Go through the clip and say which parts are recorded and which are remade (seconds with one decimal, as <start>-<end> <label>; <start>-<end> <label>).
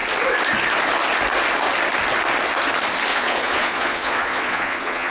0.0-3.1 recorded; 3.1-5.1 remade